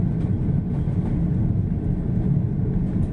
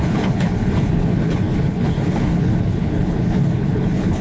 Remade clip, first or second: second